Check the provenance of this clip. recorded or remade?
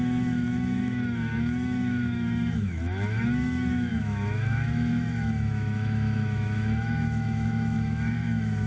remade